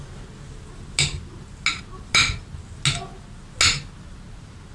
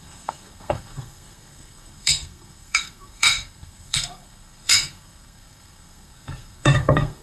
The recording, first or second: first